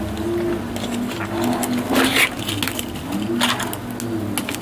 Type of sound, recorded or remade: recorded